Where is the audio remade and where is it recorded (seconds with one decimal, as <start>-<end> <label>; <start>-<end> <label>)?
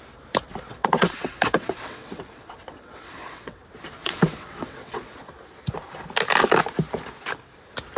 0.0-0.7 recorded; 0.7-3.6 remade; 3.6-4.0 recorded; 4.0-5.3 remade; 5.3-8.0 recorded